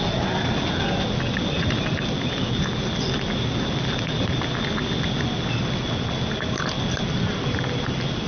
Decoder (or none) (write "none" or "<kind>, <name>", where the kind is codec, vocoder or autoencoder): none